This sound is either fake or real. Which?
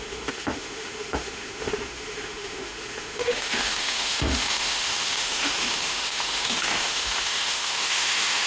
fake